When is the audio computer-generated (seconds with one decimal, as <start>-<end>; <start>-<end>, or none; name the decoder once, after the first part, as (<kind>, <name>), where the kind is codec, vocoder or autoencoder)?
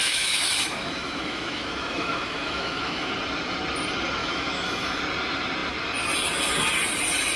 0.0-3.1 (autoencoder, DAC-VAE); 4.2-5.0